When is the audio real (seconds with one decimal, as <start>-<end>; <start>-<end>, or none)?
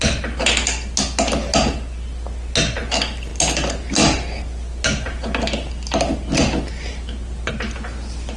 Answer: 0.0-8.4